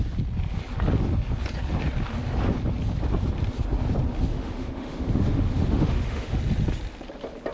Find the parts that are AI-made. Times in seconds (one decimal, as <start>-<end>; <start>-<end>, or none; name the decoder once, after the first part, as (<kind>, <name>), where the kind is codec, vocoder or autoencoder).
4.3-6.4 (autoencoder, DAC-VAE)